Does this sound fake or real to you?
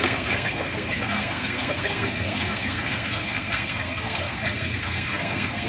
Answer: fake